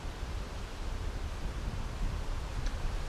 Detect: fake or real real